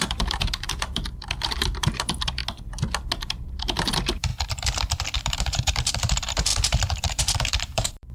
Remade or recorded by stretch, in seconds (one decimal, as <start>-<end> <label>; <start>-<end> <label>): 0.0-2.4 remade; 2.4-3.2 recorded; 3.2-4.3 remade; 4.3-5.2 recorded; 5.2-8.1 remade